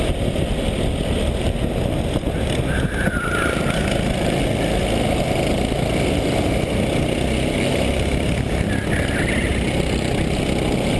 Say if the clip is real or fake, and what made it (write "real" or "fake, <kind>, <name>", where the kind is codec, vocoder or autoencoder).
real